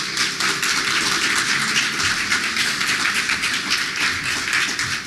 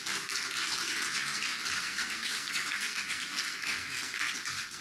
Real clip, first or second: first